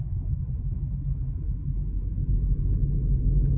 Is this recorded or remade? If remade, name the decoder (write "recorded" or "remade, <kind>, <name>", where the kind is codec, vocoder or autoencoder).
remade, autoencoder, DAC-VAE